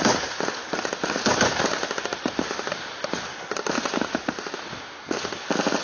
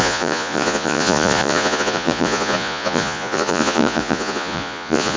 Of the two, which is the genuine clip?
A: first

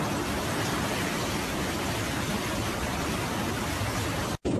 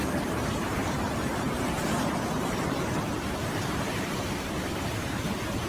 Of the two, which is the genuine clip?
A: first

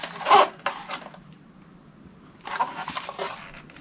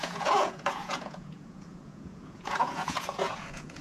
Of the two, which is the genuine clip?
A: first